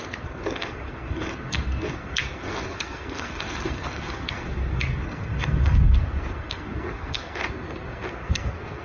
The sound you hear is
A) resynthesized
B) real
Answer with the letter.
A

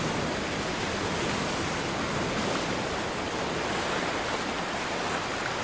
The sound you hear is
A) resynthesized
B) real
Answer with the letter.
B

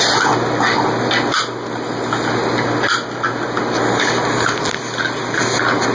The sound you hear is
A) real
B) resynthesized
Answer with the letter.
A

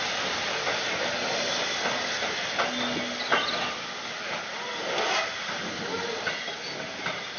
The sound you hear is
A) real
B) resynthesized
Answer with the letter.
A